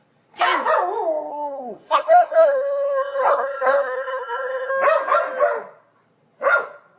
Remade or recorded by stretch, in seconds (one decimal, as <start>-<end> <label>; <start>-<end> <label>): 0.0-1.3 recorded; 1.3-4.7 remade; 4.7-7.0 recorded

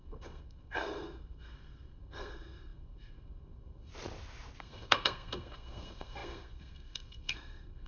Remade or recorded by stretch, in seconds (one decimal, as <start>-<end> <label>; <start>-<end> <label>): 0.0-3.9 remade; 3.9-4.6 recorded; 4.6-7.9 remade

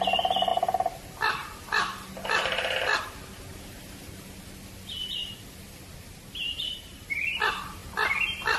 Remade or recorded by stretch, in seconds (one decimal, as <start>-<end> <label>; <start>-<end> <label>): 0.0-7.8 remade; 7.8-8.6 recorded

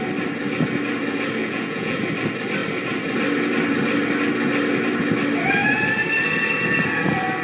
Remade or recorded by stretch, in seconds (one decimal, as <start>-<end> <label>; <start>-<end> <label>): 0.0-1.4 recorded; 1.4-2.0 remade; 2.0-7.4 recorded

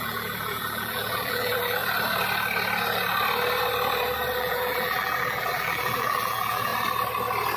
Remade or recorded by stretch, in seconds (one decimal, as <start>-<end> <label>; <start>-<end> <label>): 0.0-1.8 remade; 1.8-4.4 recorded; 4.4-6.7 remade; 6.7-7.6 recorded